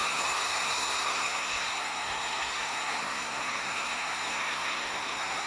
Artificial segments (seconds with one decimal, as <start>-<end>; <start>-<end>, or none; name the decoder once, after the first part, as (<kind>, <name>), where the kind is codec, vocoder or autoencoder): 0.0-5.5 (codec, SNAC)

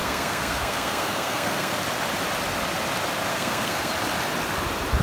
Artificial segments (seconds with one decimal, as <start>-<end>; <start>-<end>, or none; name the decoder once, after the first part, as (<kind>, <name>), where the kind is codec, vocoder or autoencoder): 0.0-1.7 (codec, SNAC); 3.3-3.9

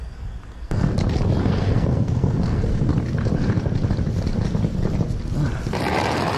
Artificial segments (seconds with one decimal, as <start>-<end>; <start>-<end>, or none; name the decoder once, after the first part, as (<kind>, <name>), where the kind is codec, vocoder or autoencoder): 0.0-0.9 (codec, SNAC); 1.4-2.9